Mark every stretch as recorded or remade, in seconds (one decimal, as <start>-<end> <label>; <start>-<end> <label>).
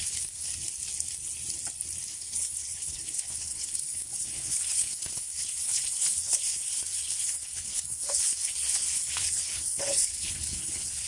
0.0-0.5 remade; 0.5-2.1 recorded; 2.1-11.1 remade